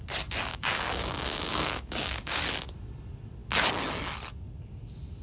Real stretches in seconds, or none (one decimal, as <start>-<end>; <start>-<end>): 0.0-0.5; 2.4-5.2

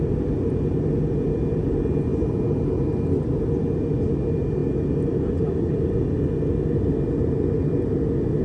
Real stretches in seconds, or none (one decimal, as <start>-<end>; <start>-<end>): 0.0-8.4

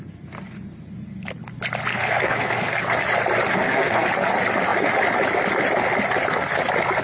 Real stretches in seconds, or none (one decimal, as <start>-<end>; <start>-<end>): 0.0-1.9; 2.9-3.5; 4.1-7.0

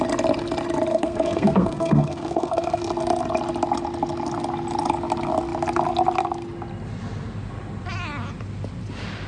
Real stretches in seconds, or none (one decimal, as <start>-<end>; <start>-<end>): 0.0-0.9; 2.8-9.3

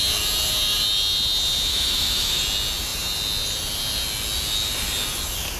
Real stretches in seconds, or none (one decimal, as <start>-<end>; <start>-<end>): 0.0-1.7; 2.4-5.6

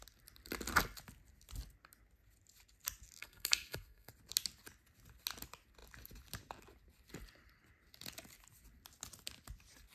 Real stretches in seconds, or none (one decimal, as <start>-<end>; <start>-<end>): 0.0-3.2; 4.1-9.9

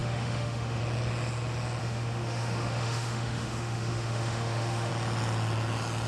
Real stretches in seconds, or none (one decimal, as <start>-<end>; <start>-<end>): 0.8-1.8; 4.9-6.1